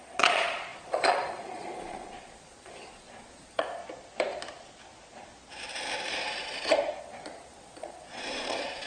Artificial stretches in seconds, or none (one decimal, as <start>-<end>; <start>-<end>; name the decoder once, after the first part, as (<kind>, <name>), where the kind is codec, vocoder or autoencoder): 0.0-3.8 (vocoder, Vocos); 7.0-8.9